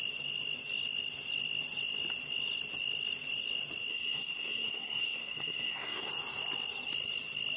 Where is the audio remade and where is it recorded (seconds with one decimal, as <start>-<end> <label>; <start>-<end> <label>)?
0.0-3.9 recorded; 3.9-6.1 remade; 6.1-7.6 recorded